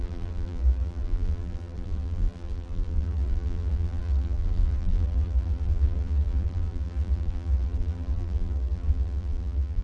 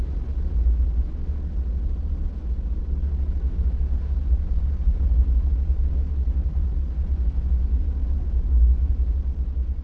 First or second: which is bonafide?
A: second